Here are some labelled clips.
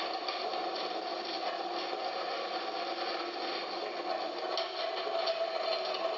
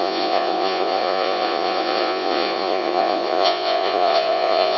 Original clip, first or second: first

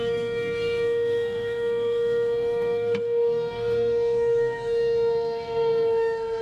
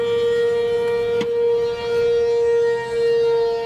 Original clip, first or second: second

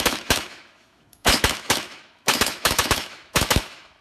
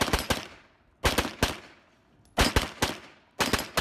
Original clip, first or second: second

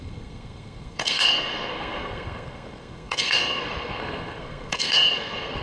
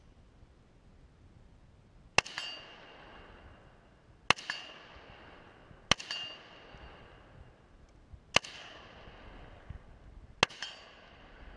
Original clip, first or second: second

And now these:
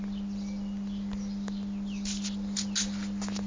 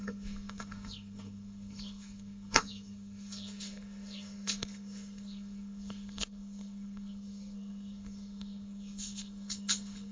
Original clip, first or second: first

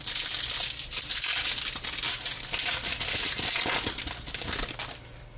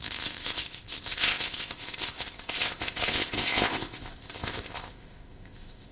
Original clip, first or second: first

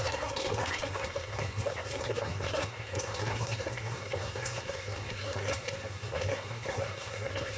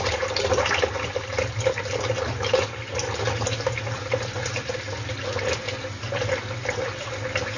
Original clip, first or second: second